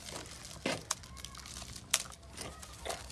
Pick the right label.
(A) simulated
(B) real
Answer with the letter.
B